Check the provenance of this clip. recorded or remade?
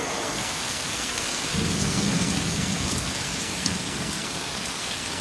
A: remade